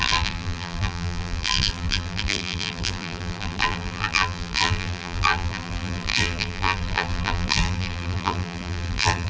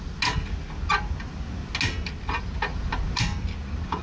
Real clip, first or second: second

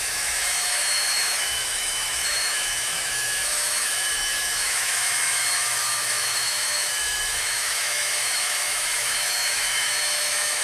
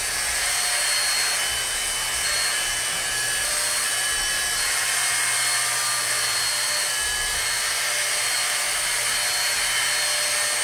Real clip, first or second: second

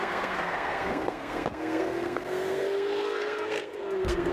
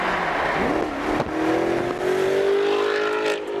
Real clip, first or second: second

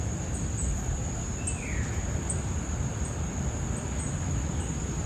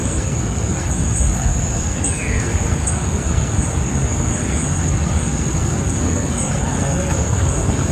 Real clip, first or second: first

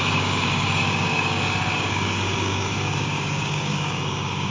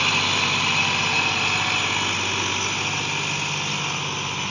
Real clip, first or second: second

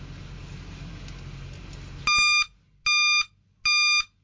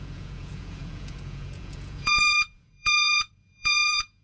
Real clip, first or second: first